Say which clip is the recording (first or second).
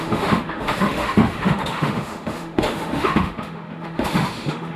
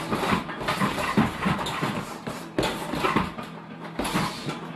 second